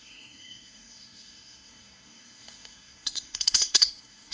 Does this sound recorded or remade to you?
remade